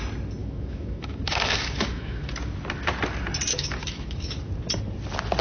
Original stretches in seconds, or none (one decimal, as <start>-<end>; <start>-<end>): 0.0-0.4; 2.3-3.5; 4.5-5.4